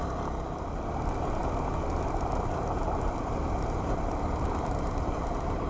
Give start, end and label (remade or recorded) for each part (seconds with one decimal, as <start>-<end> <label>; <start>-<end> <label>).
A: 0.0-5.7 recorded